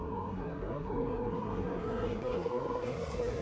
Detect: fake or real fake